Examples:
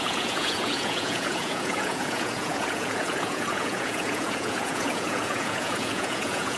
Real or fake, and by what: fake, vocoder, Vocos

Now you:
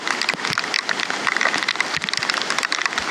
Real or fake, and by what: real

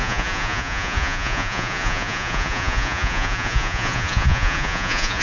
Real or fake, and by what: fake, vocoder, Vocos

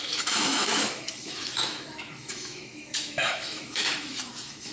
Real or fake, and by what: fake, autoencoder, DAC-VAE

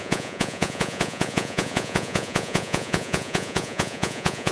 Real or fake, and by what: fake, vocoder, Vocos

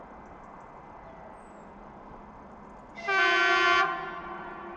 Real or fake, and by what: real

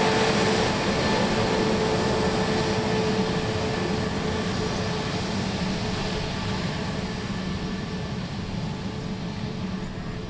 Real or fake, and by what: real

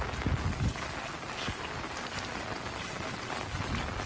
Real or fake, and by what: real